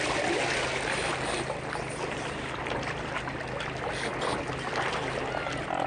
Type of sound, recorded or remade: recorded